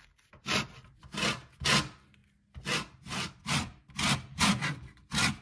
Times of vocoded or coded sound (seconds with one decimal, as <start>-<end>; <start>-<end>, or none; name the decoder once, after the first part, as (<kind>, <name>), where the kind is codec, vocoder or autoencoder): none